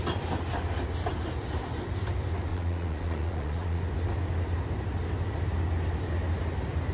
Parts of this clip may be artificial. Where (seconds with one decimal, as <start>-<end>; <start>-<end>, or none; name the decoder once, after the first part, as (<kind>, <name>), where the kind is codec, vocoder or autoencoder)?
2.5-3.8 (vocoder, Vocos)